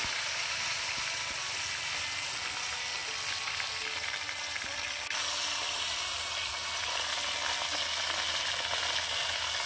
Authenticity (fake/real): real